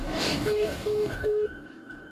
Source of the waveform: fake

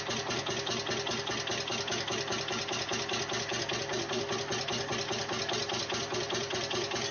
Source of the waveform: real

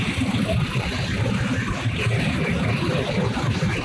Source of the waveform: real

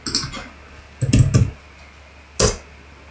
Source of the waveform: real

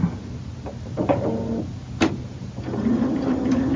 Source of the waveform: real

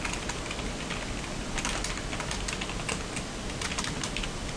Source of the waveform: real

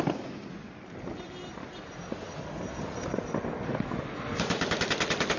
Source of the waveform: real